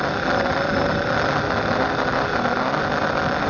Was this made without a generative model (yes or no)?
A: yes